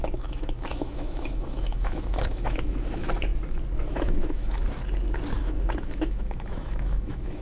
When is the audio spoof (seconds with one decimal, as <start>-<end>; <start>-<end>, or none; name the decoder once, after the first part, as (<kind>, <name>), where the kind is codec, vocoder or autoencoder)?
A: 0.0-3.3 (autoencoder, DAC-VAE); 3.9-4.6; 5.4-7.4